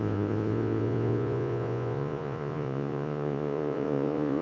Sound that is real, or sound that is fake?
fake